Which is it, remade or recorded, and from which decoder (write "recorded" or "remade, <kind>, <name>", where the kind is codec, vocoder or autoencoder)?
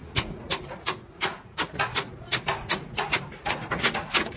remade, vocoder, Vocos